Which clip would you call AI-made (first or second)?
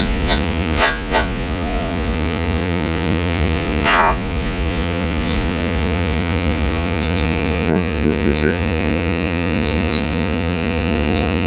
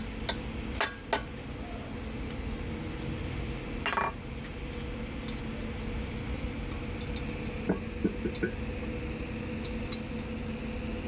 first